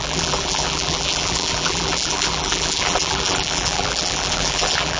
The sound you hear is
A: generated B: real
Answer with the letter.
A